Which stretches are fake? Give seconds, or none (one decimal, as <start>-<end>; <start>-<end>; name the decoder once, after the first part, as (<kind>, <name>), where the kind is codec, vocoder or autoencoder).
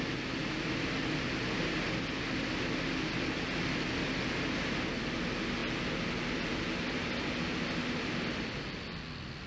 none